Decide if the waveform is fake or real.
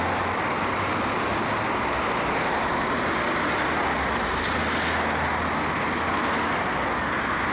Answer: real